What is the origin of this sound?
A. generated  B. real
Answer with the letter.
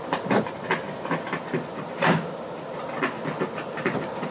B